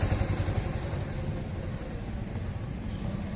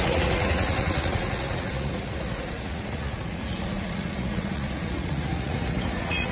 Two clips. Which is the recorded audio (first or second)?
first